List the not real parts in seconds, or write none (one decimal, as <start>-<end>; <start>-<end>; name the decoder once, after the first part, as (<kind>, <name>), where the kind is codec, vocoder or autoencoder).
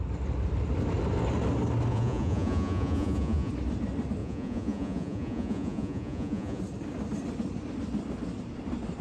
1.9-3.5 (vocoder, Vocos); 4.2-6.6